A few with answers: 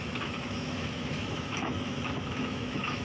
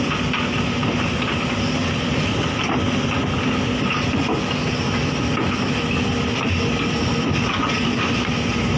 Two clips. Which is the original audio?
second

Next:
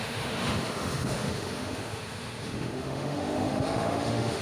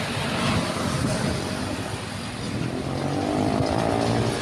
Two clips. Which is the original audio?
second